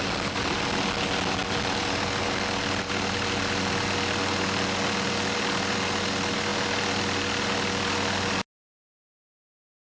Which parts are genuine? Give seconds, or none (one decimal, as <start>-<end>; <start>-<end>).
0.0-10.0